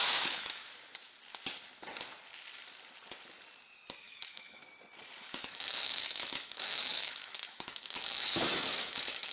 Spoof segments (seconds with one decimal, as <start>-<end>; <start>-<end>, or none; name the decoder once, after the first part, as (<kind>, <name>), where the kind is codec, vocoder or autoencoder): 0.0-0.6 (autoencoder, DAC-VAE); 4.0-4.6; 5.2-9.3

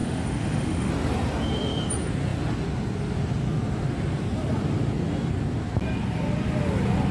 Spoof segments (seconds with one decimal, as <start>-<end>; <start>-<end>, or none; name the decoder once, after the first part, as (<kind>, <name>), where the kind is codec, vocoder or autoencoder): 0.0-0.9 (autoencoder, DAC-VAE)

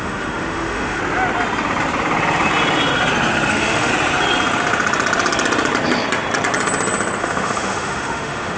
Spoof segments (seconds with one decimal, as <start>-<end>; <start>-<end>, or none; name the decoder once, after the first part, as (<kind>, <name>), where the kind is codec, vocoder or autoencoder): 0.0-1.0 (autoencoder, DAC-VAE); 3.5-3.9; 7.2-8.6

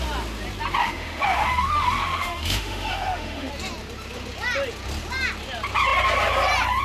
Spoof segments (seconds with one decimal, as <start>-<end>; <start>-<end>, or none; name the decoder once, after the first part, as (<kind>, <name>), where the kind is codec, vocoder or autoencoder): 0.8-3.5 (autoencoder, DAC-VAE)

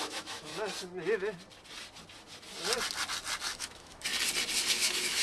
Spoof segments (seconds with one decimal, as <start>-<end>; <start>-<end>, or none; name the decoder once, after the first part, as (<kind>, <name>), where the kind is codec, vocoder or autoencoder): 0.0-0.5 (autoencoder, DAC-VAE); 3.6-4.1; 4.7-5.2

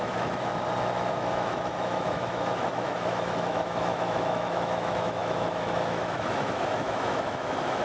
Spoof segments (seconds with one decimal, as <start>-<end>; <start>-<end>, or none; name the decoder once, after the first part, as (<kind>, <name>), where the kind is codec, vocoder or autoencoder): 0.0-0.5 (autoencoder, DAC-VAE); 1.1-7.8

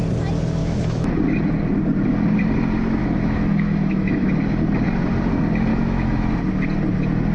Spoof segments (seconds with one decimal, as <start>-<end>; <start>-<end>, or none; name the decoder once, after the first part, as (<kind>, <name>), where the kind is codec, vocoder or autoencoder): 0.6-1.2 (autoencoder, DAC-VAE); 3.0-4.3; 5.7-6.3